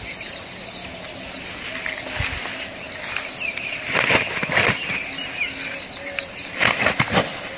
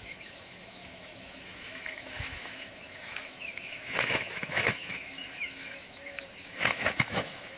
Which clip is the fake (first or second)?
second